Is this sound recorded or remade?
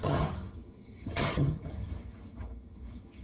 remade